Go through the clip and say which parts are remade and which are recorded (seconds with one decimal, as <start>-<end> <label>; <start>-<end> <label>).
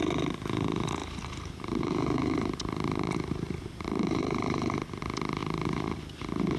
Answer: 0.0-1.0 recorded; 1.0-5.0 remade; 5.0-5.4 recorded; 5.4-6.0 remade; 6.0-6.6 recorded